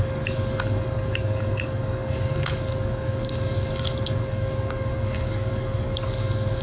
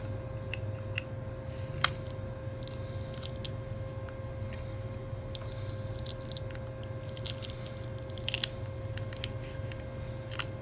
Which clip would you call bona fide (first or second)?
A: second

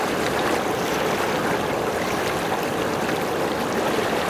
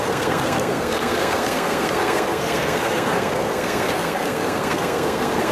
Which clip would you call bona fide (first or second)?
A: first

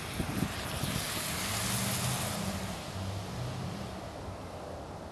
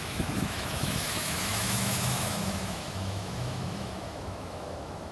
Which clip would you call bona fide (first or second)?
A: first